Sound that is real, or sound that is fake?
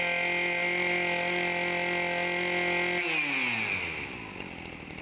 real